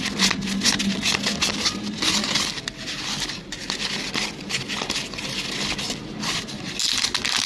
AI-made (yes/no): no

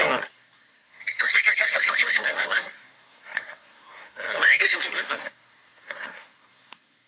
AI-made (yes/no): yes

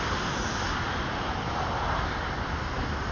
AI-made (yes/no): no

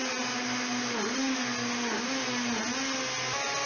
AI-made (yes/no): no